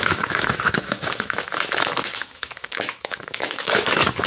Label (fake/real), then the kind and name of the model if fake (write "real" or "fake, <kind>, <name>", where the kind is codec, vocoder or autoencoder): fake, autoencoder, DAC-VAE